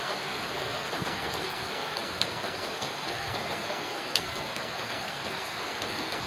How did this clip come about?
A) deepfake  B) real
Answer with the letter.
A